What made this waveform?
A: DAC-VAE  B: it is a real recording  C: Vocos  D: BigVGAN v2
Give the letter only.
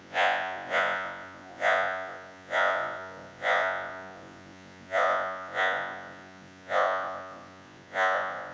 C